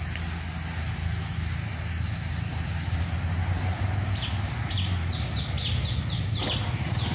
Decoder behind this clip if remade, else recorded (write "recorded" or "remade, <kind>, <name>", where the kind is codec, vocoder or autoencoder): recorded